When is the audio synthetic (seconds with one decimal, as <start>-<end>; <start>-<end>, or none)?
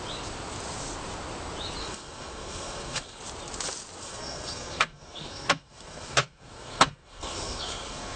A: 1.8-3.2; 4.0-8.2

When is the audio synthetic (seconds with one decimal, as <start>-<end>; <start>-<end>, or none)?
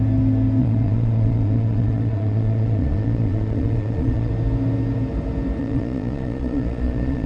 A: 0.6-4.3; 5.6-7.3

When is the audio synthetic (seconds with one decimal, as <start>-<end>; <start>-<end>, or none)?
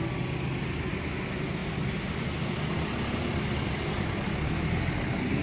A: none